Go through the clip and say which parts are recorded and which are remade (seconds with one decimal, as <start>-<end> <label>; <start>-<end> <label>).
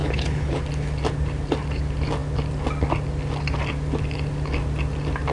0.0-0.6 remade; 0.6-5.3 recorded